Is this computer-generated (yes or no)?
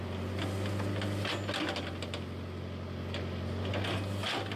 no